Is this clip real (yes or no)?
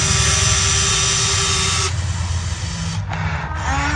yes